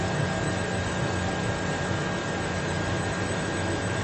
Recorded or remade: remade